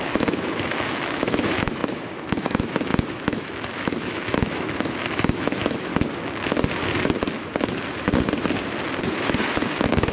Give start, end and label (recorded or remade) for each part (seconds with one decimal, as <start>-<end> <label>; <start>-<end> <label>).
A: 0.0-5.9 remade; 5.9-9.0 recorded; 9.0-10.1 remade